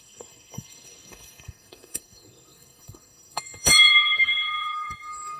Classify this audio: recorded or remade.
remade